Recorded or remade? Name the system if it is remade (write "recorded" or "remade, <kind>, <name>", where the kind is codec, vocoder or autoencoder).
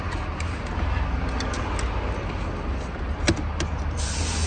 recorded